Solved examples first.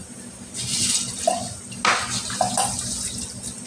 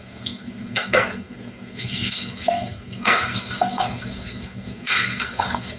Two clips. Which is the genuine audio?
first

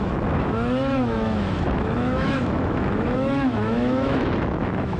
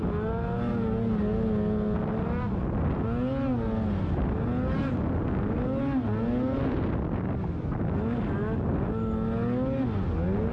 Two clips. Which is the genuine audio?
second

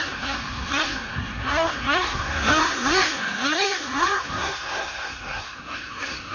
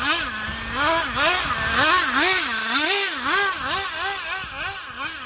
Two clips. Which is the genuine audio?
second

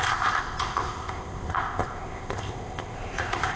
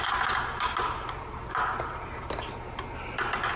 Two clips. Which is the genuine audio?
second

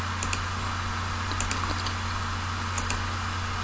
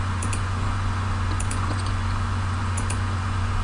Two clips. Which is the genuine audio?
first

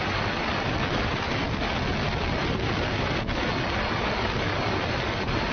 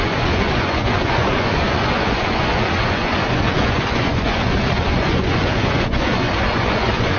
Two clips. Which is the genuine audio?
first